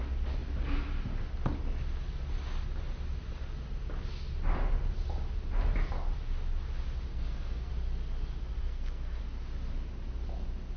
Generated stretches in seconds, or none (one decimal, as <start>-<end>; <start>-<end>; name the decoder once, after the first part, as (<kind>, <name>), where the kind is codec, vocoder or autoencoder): 7.1-7.7 (codec, SNAC); 8.6-9.2